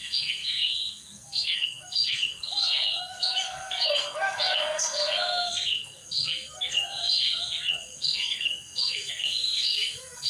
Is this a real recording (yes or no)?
no